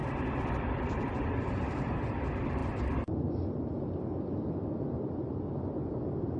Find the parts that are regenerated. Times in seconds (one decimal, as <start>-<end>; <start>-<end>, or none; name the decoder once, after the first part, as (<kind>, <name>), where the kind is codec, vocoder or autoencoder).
0.5-6.4 (vocoder, BigVGAN v2)